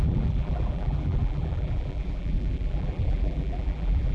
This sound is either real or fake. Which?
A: fake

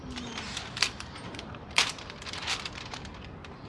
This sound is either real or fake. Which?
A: fake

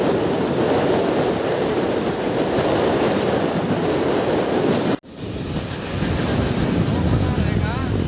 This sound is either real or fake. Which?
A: real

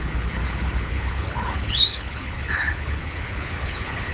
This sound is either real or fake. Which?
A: fake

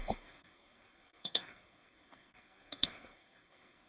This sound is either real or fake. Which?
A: fake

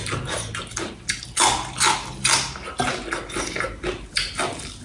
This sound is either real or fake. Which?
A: real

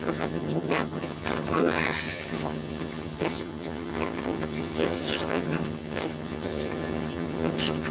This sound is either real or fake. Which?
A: fake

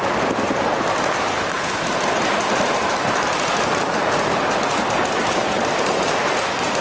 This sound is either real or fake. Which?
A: fake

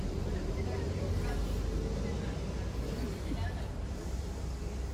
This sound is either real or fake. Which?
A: real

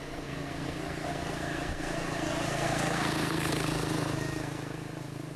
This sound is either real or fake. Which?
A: fake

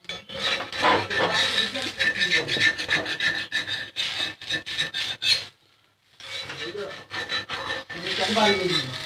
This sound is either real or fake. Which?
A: real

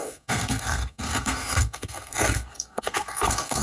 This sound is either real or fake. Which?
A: fake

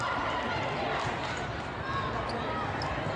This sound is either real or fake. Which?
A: real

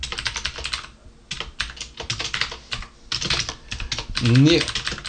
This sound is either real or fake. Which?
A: real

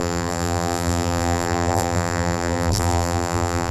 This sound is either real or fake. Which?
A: fake